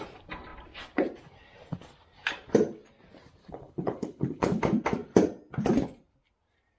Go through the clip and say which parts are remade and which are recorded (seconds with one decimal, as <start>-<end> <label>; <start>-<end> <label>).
0.0-3.4 recorded; 3.4-4.6 remade; 4.6-6.8 recorded